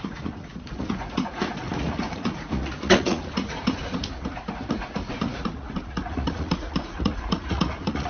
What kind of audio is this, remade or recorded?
remade